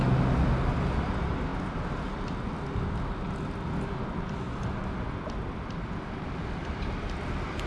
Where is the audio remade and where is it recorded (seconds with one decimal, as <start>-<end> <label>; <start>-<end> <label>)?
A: 0.0-7.7 recorded